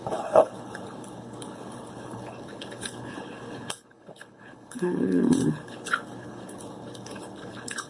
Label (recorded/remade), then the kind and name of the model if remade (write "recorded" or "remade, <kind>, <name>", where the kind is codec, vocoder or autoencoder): remade, codec, HILCodec